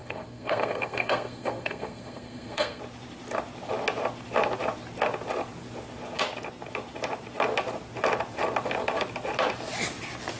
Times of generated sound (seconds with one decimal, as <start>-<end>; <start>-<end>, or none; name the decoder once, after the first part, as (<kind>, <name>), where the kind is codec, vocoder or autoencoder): 0.0-2.8 (codec, SNAC)